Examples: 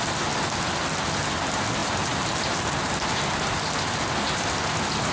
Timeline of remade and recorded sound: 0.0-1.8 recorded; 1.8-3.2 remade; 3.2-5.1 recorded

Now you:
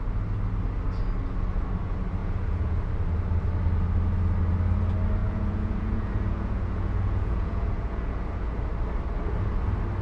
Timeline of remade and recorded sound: 0.0-2.2 recorded; 2.2-2.9 remade; 2.9-5.2 recorded; 5.2-8.6 remade; 8.6-10.0 recorded

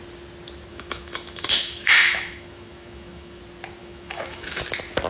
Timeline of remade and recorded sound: 0.0-0.7 recorded; 0.7-3.4 remade; 3.4-3.8 recorded; 3.8-4.6 remade; 4.6-5.1 recorded

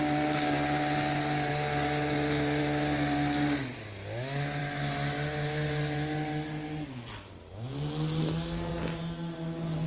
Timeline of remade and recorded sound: 0.0-9.9 recorded